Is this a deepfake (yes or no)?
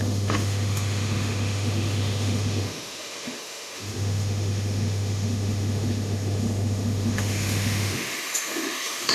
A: yes